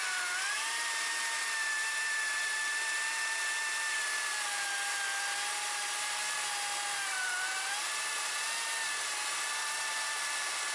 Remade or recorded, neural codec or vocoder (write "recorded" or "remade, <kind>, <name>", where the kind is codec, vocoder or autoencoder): recorded